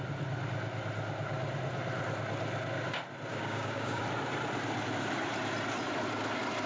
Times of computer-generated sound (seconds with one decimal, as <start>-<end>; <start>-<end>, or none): 3.3-4.0